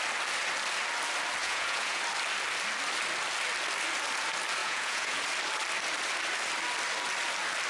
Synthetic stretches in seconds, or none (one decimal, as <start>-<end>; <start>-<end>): 1.4-2.0; 4.6-5.2